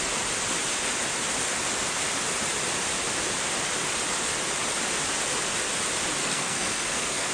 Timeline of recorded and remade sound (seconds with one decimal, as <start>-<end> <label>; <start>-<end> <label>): 0.0-6.2 recorded; 6.2-7.3 remade